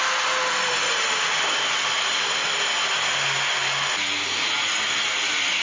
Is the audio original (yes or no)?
yes